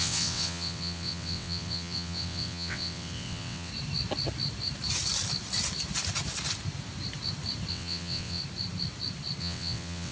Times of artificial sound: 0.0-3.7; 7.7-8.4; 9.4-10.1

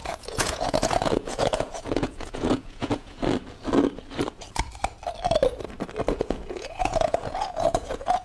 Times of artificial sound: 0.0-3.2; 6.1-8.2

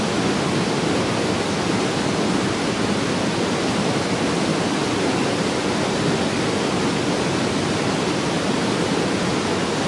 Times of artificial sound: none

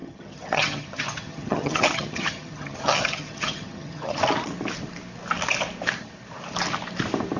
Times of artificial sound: 0.0-4.2

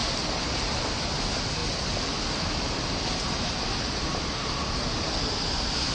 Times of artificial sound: none